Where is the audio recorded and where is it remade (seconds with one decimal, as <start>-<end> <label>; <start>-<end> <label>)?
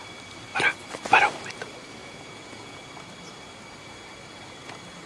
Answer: 0.0-2.0 recorded; 2.0-2.9 remade; 2.9-5.1 recorded